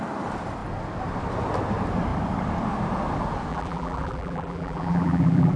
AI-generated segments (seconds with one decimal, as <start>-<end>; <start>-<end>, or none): 3.5-5.6